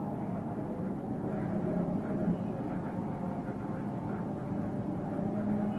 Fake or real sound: real